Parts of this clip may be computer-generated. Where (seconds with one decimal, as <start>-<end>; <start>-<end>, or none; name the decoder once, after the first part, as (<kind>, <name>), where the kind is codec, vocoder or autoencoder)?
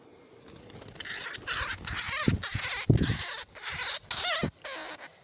none